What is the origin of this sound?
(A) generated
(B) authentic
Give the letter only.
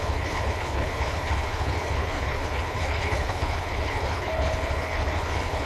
A